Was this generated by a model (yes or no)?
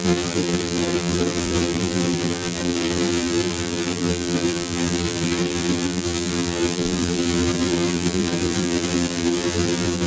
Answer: yes